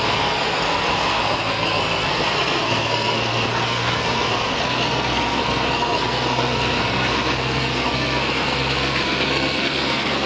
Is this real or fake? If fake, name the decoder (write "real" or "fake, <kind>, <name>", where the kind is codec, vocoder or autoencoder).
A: fake, codec, SNAC